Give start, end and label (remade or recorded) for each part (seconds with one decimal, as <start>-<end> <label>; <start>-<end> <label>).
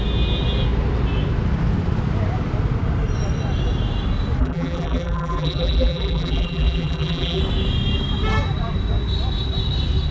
0.0-4.4 recorded; 4.4-7.4 remade; 7.4-10.1 recorded